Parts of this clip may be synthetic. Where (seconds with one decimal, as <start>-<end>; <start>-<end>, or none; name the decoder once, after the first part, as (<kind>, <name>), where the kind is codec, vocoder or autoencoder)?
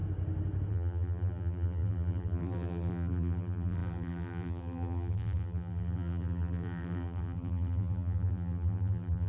0.7-9.3 (vocoder, BigVGAN v2)